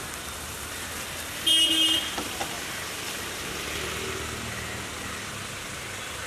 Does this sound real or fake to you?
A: real